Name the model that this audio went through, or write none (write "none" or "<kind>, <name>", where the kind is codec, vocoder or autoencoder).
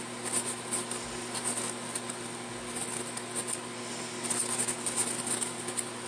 none